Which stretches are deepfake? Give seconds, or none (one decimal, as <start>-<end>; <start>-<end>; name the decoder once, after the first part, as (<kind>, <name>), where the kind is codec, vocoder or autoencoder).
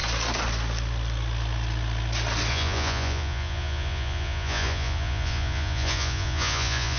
2.5-7.0 (vocoder, Vocos)